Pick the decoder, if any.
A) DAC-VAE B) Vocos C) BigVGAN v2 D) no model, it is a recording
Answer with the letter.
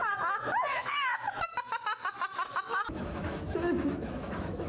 A